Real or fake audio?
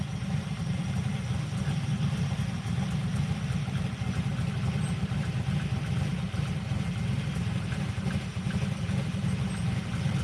real